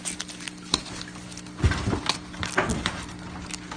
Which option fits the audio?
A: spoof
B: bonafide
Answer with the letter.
B